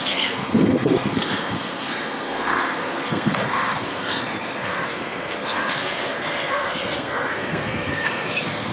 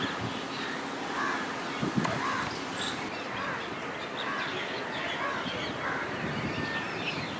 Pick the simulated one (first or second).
first